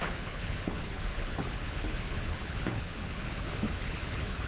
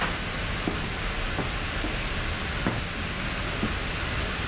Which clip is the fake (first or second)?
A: first